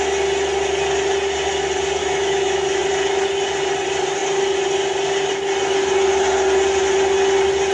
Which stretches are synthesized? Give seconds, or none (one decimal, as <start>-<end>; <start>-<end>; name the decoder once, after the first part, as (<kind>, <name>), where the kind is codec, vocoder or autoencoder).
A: 2.0-2.8 (autoencoder, DAC-VAE)